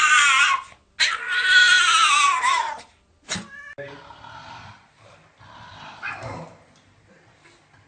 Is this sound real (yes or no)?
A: yes